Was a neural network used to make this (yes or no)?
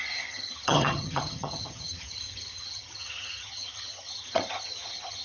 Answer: yes